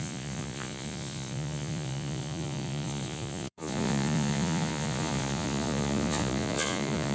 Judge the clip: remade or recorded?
remade